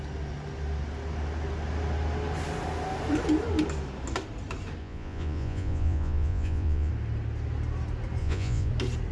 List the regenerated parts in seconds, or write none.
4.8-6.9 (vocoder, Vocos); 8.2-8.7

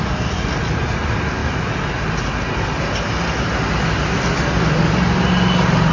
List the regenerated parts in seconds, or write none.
none